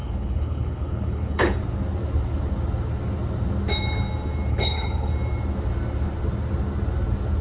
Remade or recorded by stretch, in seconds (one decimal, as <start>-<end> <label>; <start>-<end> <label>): 0.0-1.6 remade; 1.6-4.5 recorded; 4.5-5.1 remade; 5.1-7.4 recorded